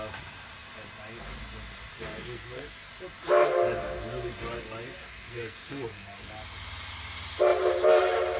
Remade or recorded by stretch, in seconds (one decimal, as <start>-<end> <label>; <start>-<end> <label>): 0.0-1.9 recorded; 1.9-2.9 remade; 2.9-5.0 recorded; 5.0-6.3 remade; 6.3-8.4 recorded